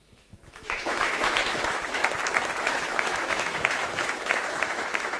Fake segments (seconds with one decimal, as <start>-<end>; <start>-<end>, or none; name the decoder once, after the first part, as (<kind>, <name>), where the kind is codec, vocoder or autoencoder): 0.0-2.0 (autoencoder, DAC-VAE); 2.6-5.2